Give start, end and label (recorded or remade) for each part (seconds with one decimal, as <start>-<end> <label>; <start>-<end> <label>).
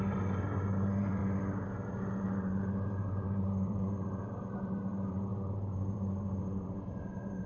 0.0-1.2 remade; 1.2-1.9 recorded; 1.9-7.5 remade